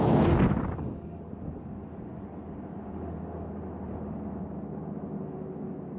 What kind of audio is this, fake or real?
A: real